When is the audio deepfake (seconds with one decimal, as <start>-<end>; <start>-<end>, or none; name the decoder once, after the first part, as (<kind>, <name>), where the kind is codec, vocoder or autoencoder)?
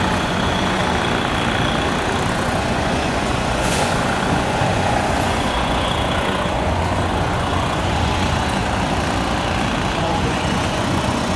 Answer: 0.0-0.8 (vocoder, Vocos); 2.3-8.6; 10.0-11.4